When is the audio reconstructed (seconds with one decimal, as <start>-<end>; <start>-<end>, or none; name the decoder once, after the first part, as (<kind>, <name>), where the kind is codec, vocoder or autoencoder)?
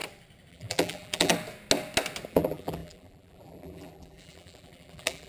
0.5-1.3 (vocoder, BigVGAN v2); 2.3-5.3